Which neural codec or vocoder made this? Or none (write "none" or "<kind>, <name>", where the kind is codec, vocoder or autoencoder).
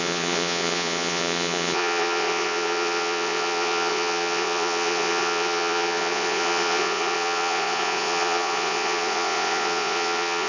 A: vocoder, Vocos